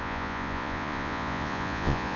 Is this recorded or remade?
remade